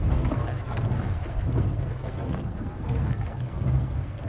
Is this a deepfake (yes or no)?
yes